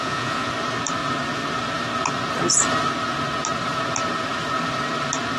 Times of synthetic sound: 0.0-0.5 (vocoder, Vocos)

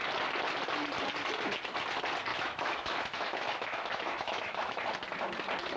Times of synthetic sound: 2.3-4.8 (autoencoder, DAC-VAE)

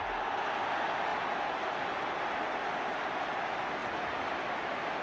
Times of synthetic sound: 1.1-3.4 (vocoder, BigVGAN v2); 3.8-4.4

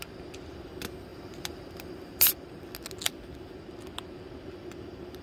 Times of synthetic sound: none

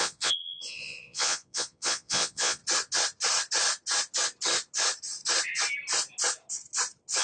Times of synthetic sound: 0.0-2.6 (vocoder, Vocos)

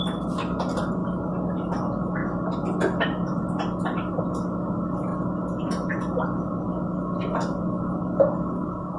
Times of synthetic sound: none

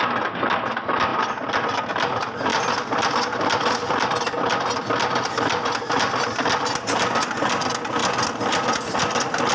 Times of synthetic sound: none

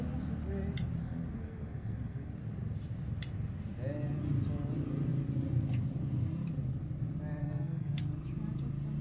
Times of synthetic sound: 1.0-2.3 (codec, SNAC); 7.4-8.0